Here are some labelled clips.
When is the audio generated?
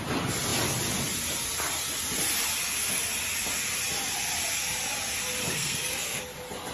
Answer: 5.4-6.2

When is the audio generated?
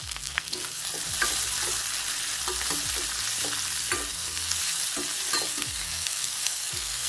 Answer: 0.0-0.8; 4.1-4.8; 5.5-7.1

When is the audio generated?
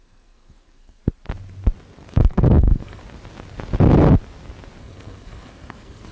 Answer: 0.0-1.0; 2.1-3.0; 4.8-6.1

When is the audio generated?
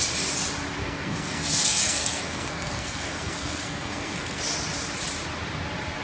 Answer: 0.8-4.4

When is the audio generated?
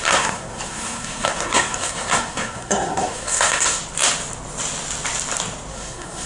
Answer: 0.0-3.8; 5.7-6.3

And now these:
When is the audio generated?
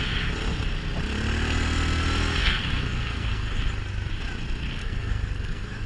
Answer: 2.4-3.6; 4.8-5.9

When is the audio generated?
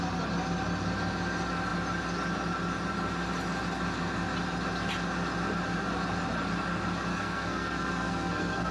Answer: 7.1-8.7